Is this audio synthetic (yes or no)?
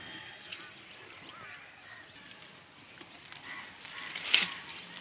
no